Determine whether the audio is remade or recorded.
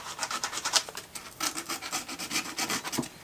recorded